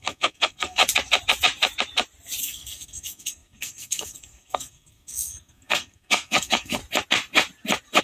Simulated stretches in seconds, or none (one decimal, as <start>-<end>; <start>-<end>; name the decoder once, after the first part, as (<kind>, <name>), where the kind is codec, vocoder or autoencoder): 0.0-0.8 (codec, SNAC); 2.4-6.8